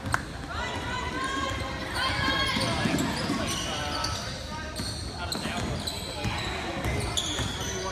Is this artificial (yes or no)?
no